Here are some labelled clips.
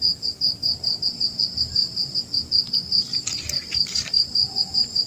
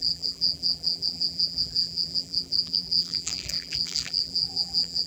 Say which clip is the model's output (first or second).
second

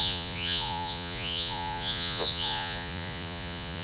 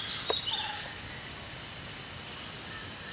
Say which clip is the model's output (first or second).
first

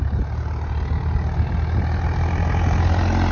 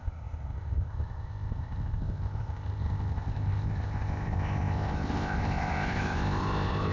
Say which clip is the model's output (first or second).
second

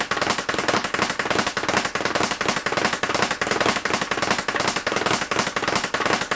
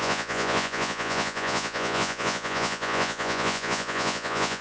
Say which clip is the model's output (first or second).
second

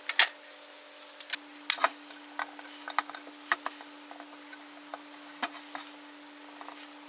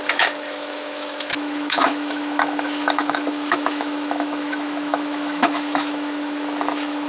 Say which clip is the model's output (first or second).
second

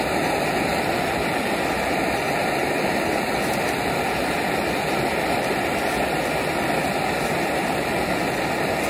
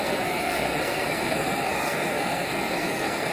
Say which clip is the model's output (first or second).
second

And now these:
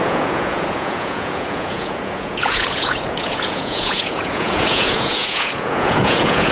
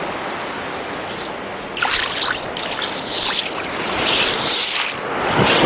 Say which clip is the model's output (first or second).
first